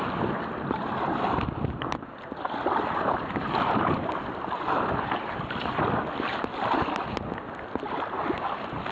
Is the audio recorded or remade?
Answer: recorded